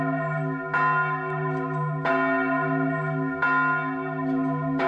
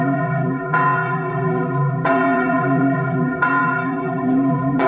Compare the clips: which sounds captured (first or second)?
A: first